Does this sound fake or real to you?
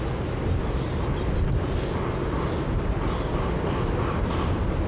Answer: real